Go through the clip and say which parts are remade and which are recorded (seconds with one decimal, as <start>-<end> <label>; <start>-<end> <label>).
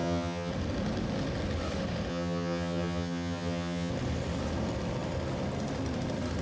0.0-0.5 remade; 0.5-2.1 recorded; 2.1-3.9 remade; 3.9-6.4 recorded